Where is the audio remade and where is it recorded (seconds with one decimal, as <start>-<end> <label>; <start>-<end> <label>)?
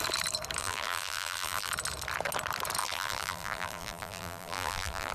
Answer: 0.0-0.6 recorded; 0.6-1.7 remade; 1.7-2.8 recorded; 2.8-5.1 remade